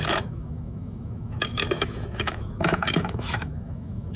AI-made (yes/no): yes